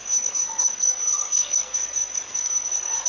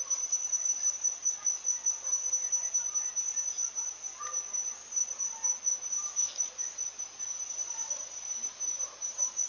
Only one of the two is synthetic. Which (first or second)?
first